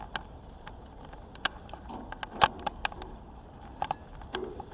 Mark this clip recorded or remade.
recorded